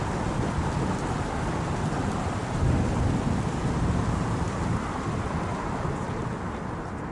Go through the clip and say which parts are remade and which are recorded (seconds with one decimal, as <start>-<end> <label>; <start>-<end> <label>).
0.0-7.1 recorded